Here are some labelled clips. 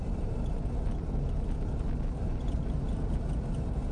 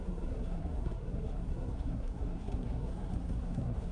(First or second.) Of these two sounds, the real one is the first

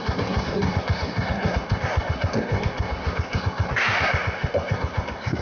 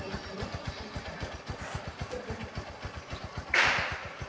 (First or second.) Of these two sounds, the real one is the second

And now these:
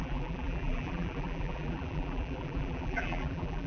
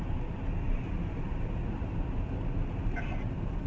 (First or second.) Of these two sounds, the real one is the second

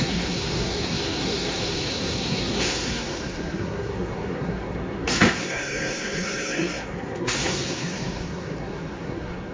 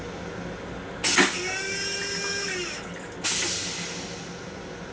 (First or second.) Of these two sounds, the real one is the second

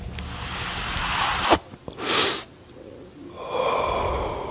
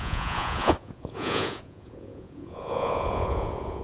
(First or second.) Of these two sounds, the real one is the first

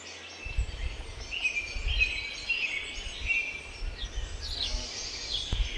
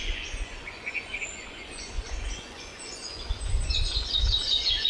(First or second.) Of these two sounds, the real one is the first